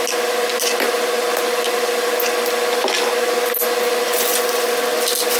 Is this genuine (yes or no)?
yes